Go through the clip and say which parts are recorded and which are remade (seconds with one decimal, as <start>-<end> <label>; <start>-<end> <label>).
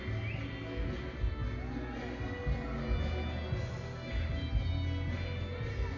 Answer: 0.0-6.0 recorded